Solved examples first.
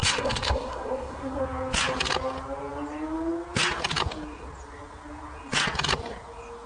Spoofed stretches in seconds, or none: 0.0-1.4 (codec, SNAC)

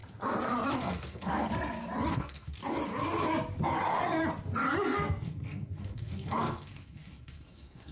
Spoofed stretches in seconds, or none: 0.8-1.5 (codec, SNAC); 2.1-2.6; 4.8-7.9

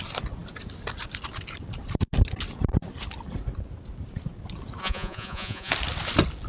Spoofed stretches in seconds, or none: 4.8-5.7 (vocoder, Vocos)

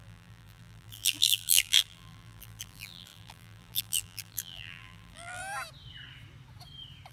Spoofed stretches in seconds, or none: 0.0-5.4 (vocoder, BigVGAN v2)

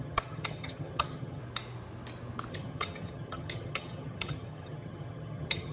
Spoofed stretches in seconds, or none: 0.0-1.4 (vocoder, HiFi-GAN); 2.5-5.7

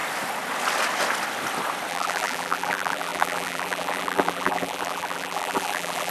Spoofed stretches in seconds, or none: 1.9-6.1 (vocoder, BigVGAN v2)